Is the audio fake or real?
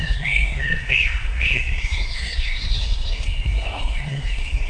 fake